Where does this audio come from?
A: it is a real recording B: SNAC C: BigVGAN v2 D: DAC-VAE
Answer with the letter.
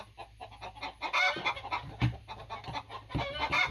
A